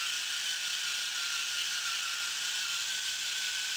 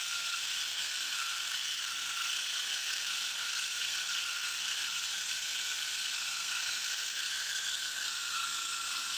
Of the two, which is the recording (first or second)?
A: first